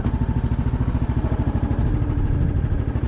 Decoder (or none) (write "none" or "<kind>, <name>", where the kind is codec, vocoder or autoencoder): none